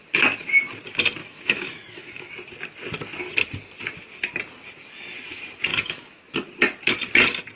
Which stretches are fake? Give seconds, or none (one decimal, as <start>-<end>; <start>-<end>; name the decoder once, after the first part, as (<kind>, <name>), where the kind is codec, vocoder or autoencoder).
1.2-2.3 (autoencoder, DAC-VAE); 5.7-6.2